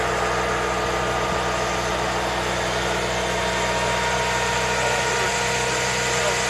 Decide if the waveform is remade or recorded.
recorded